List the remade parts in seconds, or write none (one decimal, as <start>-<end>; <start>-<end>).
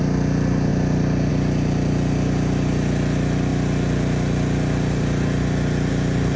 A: none